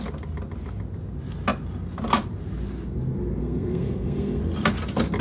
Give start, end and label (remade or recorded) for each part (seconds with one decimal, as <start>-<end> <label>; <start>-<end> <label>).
0.0-3.4 recorded; 3.4-4.4 remade; 4.4-5.2 recorded